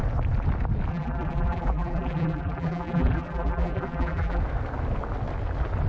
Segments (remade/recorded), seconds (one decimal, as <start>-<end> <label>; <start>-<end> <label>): 0.0-0.9 recorded; 0.9-4.4 remade; 4.4-5.9 recorded